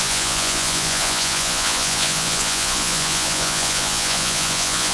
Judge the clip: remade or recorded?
remade